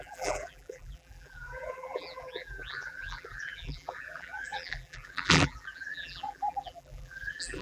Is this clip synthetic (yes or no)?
yes